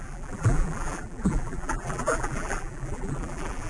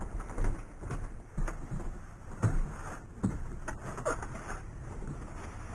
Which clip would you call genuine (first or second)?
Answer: second